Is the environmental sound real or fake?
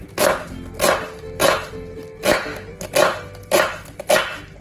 real